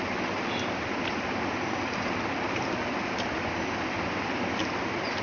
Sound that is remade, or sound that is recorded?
recorded